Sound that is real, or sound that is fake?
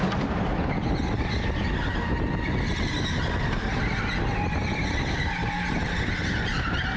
real